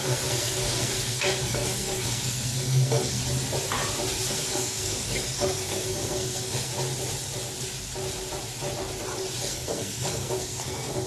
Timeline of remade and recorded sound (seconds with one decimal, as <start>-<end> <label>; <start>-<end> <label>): 0.0-3.2 remade; 3.2-4.3 recorded; 4.3-6.7 remade; 6.7-9.4 recorded; 9.4-11.1 remade